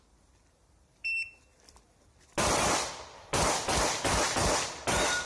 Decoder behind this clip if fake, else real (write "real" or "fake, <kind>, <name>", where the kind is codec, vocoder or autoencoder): real